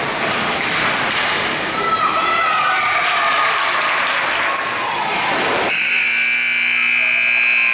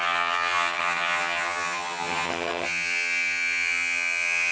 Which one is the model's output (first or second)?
second